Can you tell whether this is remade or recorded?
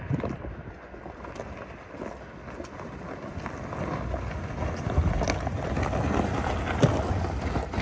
recorded